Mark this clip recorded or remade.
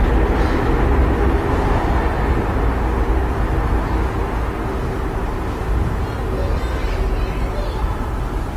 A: recorded